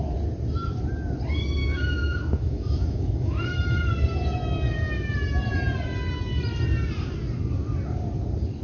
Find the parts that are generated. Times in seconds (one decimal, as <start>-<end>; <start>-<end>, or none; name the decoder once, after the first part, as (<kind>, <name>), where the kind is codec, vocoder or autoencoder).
1.6-3.9 (autoencoder, DAC-VAE)